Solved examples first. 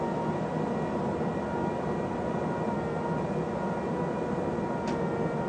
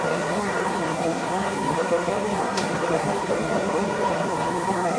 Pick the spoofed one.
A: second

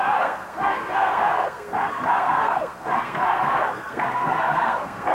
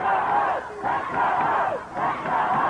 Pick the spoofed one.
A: first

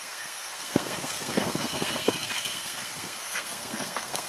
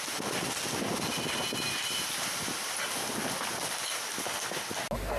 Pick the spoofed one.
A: first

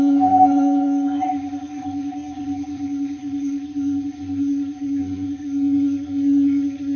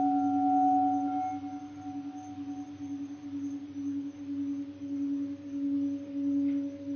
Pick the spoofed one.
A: first